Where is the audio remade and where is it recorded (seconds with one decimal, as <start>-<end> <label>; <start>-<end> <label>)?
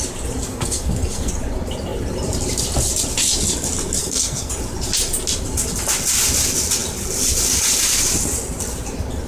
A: 0.0-0.4 recorded; 0.4-1.3 remade; 1.3-4.0 recorded; 4.0-4.5 remade; 4.5-9.3 recorded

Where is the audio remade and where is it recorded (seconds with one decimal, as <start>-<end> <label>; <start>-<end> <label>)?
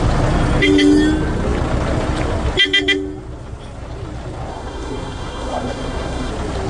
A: 0.0-4.5 recorded; 4.5-6.3 remade; 6.3-6.7 recorded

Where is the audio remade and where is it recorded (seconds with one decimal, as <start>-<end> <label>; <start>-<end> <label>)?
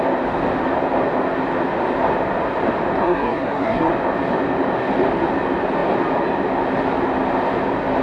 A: 0.0-3.0 recorded; 3.0-3.9 remade; 3.9-8.0 recorded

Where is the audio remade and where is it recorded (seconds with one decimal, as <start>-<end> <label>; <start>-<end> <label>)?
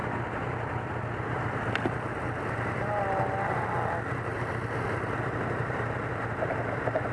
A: 0.0-7.1 recorded